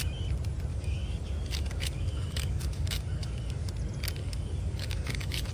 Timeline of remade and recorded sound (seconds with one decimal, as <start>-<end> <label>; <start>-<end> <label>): 0.0-0.7 recorded; 0.7-3.7 remade; 3.7-4.2 recorded; 4.2-5.5 remade